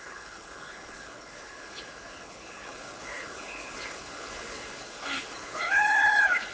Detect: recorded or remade remade